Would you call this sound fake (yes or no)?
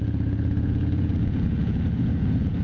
yes